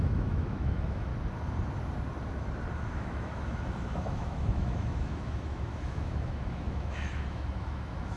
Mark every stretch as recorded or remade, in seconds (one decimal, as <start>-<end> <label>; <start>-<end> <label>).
0.0-1.1 remade; 1.1-2.7 recorded; 2.7-8.2 remade